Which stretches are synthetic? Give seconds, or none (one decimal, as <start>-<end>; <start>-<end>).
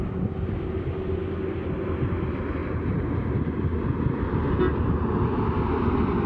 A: 2.6-3.2